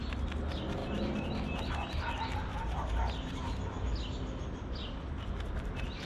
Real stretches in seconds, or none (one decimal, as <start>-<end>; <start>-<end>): 0.0-2.5; 3.5-6.1